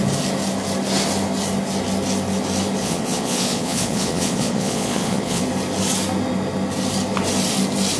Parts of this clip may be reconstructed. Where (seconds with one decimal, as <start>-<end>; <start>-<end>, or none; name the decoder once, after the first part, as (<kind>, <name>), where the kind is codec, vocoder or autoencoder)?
2.8-5.4 (vocoder, Vocos)